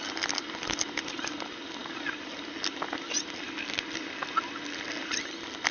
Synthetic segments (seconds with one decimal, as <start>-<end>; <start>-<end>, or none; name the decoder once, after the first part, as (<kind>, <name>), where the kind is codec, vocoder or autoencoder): none